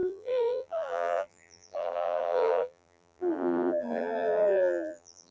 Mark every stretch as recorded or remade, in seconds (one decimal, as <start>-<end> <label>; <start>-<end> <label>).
0.0-5.3 remade